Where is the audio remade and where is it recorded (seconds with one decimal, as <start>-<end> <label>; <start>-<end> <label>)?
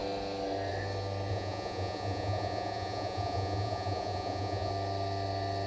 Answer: 0.0-1.3 recorded; 1.3-4.7 remade; 4.7-5.7 recorded